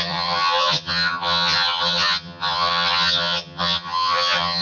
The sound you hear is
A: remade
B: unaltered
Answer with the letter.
A